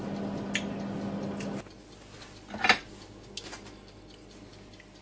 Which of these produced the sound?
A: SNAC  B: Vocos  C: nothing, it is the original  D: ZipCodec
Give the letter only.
C